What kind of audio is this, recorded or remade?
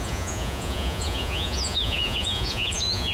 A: remade